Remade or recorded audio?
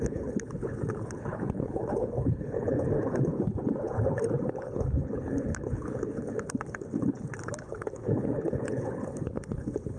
remade